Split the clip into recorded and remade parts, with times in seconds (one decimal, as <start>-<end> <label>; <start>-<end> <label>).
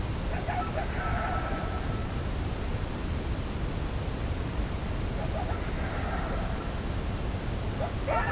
0.0-2.0 recorded; 2.0-3.3 remade; 3.3-8.3 recorded